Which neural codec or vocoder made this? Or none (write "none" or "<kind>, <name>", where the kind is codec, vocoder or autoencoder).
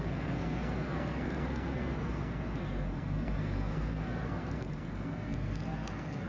codec, SNAC